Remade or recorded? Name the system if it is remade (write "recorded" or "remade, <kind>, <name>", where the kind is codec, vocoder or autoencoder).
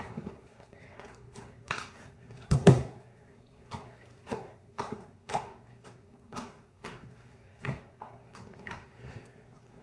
remade, codec, SNAC